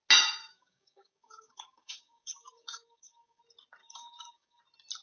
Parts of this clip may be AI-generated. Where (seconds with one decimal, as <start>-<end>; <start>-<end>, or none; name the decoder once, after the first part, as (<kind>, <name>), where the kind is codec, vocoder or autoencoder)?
0.4-3.4 (codec, DAC); 3.8-4.6